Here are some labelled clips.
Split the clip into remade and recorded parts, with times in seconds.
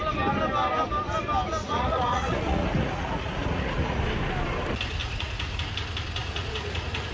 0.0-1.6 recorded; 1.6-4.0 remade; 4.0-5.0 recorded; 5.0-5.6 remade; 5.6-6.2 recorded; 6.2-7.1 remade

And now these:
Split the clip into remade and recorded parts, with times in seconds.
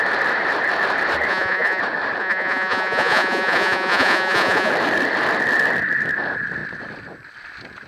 0.0-1.3 recorded; 1.3-1.8 remade; 1.8-2.2 recorded; 2.2-4.7 remade; 4.7-7.9 recorded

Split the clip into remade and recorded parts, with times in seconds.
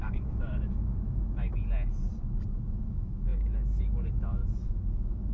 0.0-1.5 remade; 1.5-2.8 recorded; 2.8-4.4 remade; 4.4-5.3 recorded